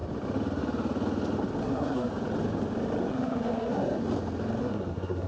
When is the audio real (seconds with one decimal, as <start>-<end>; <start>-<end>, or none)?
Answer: 0.0-1.6; 2.1-3.0; 4.0-4.6